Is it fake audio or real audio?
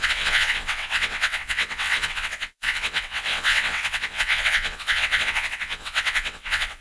fake